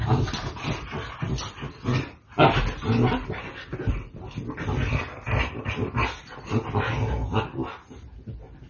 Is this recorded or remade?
recorded